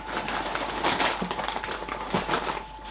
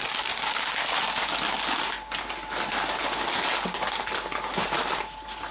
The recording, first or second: second